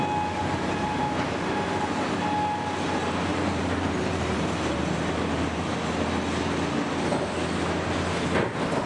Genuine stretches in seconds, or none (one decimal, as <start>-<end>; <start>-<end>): 0.0-0.4; 1.0-3.3; 5.7-8.9